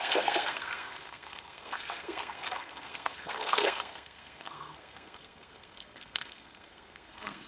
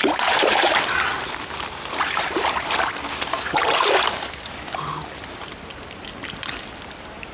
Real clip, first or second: second